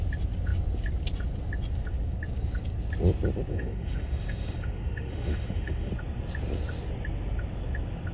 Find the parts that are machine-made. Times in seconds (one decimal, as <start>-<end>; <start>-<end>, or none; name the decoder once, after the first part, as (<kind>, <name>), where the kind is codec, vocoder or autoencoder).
3.5-5.9 (autoencoder, DAC-VAE)